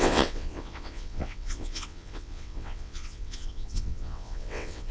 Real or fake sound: fake